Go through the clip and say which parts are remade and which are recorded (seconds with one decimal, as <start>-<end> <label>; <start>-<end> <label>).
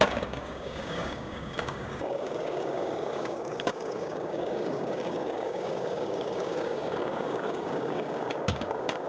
0.0-9.1 remade